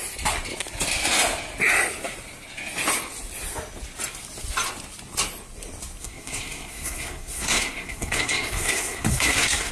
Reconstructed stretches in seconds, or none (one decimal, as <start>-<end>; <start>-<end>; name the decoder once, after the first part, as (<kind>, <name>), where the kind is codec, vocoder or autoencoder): 6.0-9.7 (codec, SNAC)